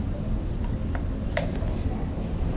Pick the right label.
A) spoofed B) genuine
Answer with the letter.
B